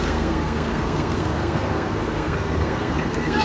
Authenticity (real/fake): fake